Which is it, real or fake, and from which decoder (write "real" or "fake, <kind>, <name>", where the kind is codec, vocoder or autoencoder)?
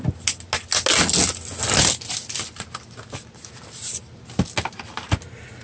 real